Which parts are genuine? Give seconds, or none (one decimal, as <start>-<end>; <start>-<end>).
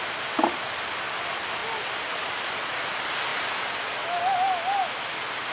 0.0-5.5